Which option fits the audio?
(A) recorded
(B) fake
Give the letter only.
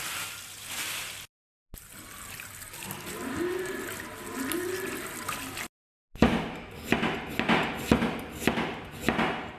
A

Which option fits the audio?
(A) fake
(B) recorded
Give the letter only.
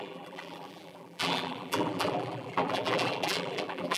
A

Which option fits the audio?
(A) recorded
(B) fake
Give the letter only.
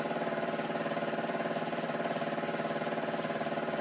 B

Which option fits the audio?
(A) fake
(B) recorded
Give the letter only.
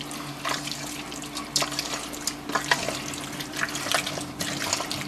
B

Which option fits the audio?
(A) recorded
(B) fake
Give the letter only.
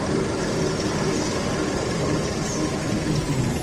B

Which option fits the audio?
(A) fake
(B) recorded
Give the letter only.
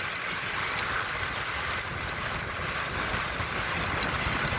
B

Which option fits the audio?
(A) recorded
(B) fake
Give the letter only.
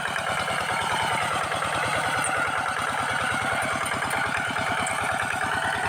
A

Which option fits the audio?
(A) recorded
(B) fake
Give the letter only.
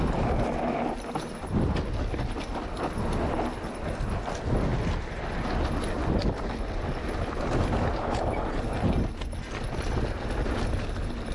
A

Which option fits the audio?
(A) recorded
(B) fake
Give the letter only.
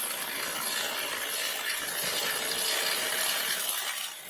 A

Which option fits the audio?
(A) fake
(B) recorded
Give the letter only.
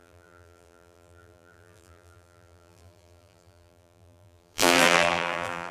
A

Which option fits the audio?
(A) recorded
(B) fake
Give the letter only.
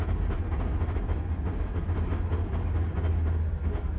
A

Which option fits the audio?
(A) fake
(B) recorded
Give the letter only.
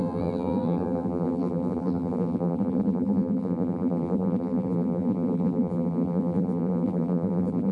A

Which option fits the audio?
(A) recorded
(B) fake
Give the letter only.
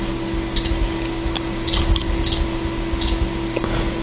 A